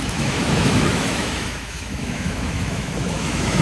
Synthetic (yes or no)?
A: yes